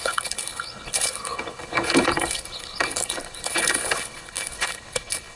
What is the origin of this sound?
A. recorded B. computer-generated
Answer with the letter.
B